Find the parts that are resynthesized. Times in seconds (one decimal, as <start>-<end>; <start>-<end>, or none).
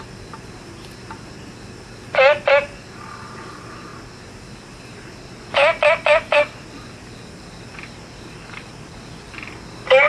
none